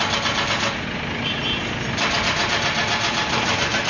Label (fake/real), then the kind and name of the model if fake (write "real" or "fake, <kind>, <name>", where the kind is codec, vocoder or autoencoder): real